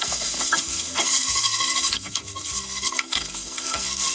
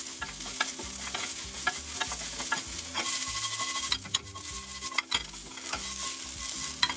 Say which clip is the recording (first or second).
second